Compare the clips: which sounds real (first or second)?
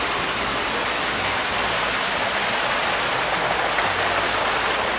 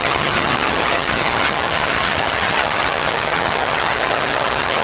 first